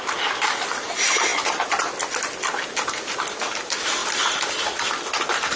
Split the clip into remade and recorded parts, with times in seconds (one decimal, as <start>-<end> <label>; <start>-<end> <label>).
0.0-5.6 recorded